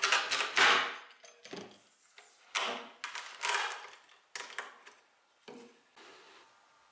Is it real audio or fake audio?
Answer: real